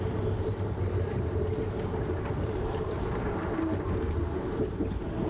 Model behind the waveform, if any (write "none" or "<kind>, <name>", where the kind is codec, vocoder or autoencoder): vocoder, BigVGAN v2